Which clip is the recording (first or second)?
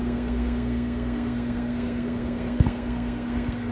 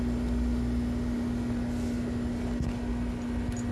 second